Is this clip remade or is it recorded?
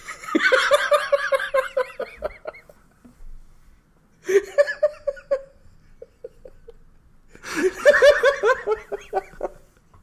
recorded